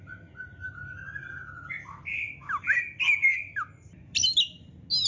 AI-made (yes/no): no